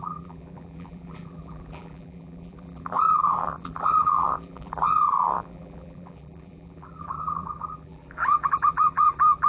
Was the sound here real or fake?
fake